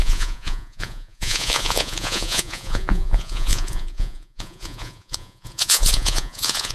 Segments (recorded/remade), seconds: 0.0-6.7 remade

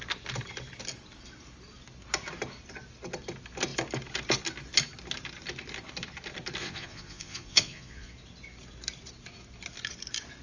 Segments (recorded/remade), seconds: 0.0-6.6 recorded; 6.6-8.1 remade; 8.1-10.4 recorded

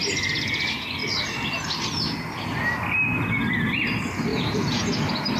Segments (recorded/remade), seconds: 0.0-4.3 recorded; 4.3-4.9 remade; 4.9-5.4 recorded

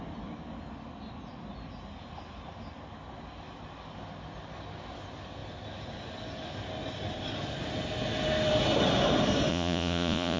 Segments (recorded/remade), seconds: 0.0-9.5 recorded; 9.5-10.4 remade

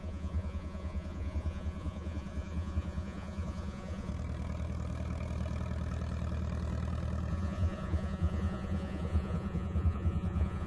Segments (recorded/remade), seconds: 0.0-4.1 remade; 4.1-7.3 recorded; 7.3-10.7 remade

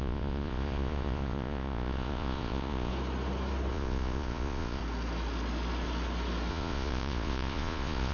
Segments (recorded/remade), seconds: 0.0-2.9 remade; 2.9-3.7 recorded; 3.7-4.8 remade; 4.8-6.5 recorded; 6.5-8.1 remade

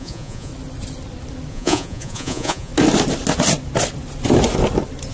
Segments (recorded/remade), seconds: 0.0-0.5 remade; 0.5-1.5 recorded; 1.5-2.7 remade; 2.7-5.1 recorded